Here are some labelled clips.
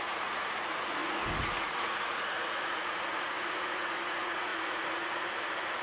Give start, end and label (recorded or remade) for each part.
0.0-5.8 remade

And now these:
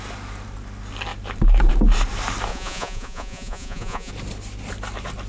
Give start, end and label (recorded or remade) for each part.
0.0-2.5 recorded; 2.5-4.1 remade; 4.1-5.3 recorded